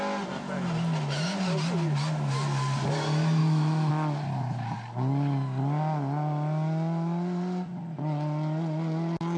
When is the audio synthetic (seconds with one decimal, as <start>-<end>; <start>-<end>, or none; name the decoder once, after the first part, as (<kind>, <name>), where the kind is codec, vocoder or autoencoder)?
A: 3.4-3.9 (autoencoder, DAC-VAE)

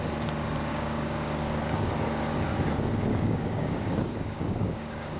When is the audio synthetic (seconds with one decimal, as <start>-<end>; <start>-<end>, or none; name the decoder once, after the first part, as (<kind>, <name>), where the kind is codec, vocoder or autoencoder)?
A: 0.7-1.9 (codec, DAC); 3.1-5.2

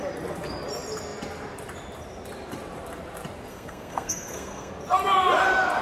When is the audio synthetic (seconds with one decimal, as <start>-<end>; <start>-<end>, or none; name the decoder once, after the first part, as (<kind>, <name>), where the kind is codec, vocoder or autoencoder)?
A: 3.5-4.7 (codec, SNAC)